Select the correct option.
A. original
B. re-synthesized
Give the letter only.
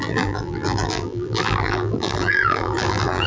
B